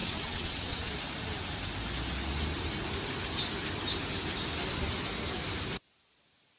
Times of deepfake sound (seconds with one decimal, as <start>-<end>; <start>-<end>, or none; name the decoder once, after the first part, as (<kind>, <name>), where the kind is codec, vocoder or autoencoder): 0.0-0.9 (vocoder, WaveNeXt)